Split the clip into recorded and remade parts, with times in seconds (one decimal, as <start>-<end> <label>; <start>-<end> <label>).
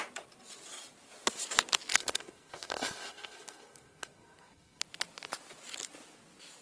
0.0-1.9 recorded; 1.9-4.8 remade; 4.8-6.6 recorded